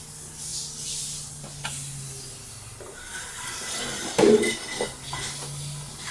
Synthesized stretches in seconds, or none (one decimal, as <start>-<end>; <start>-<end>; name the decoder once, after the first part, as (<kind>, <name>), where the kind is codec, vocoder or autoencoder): none